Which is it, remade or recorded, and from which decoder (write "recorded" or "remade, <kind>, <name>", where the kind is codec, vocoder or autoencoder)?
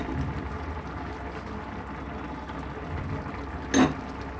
recorded